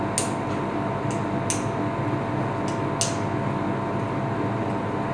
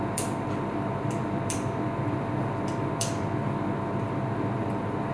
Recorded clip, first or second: first